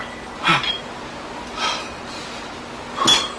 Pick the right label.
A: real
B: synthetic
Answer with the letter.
A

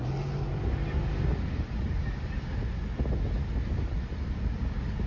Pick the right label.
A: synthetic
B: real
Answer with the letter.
B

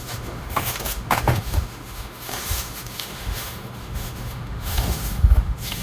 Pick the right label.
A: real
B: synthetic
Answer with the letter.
B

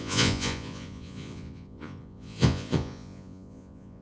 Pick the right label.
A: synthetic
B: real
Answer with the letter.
A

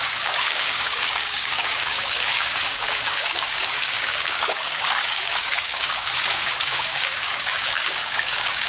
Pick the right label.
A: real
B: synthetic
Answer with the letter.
B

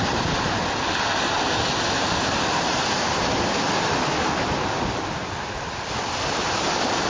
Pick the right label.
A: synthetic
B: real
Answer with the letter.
B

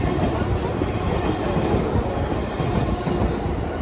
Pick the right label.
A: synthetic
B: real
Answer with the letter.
B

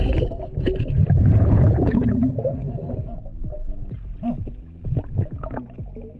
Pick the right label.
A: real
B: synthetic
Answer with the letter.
B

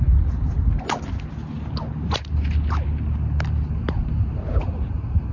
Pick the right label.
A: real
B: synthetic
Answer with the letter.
A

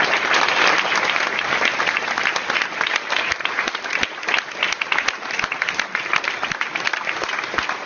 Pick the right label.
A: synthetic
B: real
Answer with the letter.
B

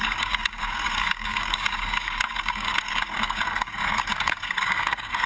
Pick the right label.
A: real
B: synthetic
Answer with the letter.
B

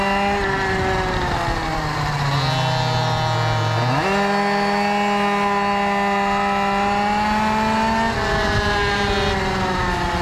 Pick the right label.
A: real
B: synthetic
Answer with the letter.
A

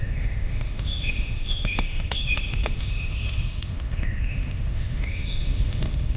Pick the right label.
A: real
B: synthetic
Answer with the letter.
B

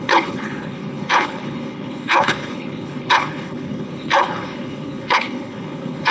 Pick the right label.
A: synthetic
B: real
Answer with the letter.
A